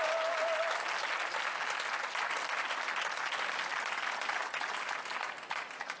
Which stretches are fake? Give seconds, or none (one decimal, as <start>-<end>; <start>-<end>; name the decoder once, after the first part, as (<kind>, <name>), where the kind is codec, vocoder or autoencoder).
none